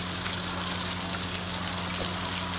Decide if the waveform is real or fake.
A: real